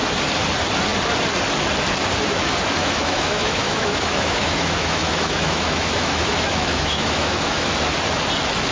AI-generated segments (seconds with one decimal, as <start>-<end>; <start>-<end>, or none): 2.8-7.7